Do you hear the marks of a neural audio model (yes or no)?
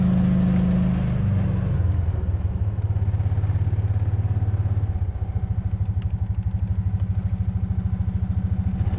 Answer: no